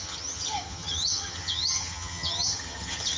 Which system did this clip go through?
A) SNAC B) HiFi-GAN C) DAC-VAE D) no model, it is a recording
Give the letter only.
B